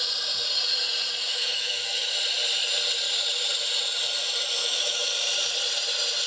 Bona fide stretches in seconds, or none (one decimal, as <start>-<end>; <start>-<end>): 0.0-1.3; 2.1-4.6; 5.1-6.3